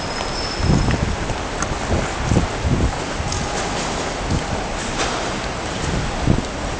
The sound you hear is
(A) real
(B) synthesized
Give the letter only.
A